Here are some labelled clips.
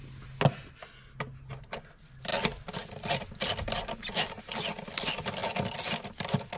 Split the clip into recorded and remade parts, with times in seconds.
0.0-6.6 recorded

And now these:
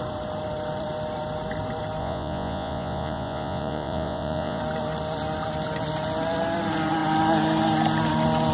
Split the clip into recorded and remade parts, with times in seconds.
0.0-2.0 recorded; 2.0-4.6 remade; 4.6-8.5 recorded